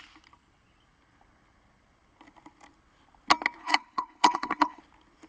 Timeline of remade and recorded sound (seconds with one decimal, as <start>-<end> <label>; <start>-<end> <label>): 0.0-3.6 recorded; 3.6-4.8 remade; 4.8-5.3 recorded